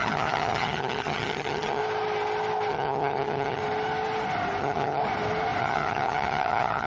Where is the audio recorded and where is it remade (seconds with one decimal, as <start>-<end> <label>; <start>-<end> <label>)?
0.0-1.8 remade; 1.8-2.7 recorded; 2.7-3.6 remade; 3.6-4.6 recorded; 4.6-5.0 remade; 5.0-5.6 recorded; 5.6-6.9 remade

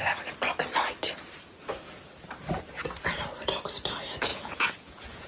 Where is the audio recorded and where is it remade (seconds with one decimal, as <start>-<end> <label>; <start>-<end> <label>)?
0.0-4.3 recorded; 4.3-5.3 remade

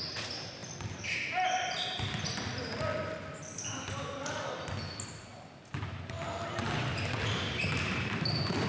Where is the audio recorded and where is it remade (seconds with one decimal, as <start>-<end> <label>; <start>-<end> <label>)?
0.0-8.7 recorded

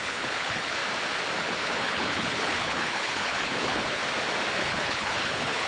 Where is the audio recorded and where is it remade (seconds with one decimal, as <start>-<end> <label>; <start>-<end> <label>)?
0.0-0.8 remade; 0.8-1.4 recorded; 1.4-4.0 remade; 4.0-4.6 recorded; 4.6-5.7 remade